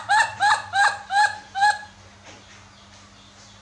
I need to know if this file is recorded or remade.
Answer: recorded